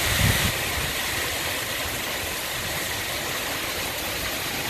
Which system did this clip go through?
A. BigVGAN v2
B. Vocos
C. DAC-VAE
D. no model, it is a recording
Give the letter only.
D